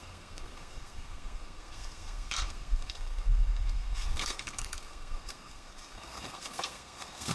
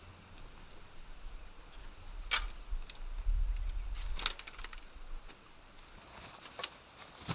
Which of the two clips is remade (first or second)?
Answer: first